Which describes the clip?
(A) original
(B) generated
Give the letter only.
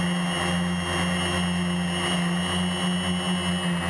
A